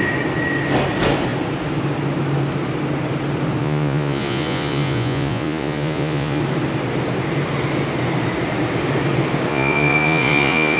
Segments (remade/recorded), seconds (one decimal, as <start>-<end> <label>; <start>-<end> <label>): 0.0-3.6 recorded; 3.6-6.4 remade; 6.4-9.5 recorded; 9.5-10.8 remade